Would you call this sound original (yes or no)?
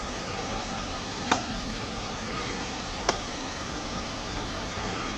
no